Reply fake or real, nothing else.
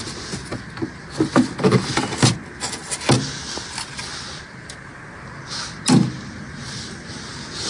real